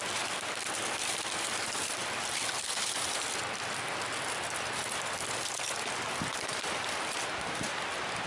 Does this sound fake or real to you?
fake